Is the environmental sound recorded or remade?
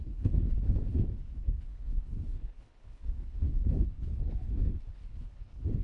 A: remade